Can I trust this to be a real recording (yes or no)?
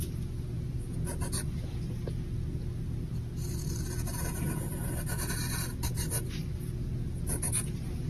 yes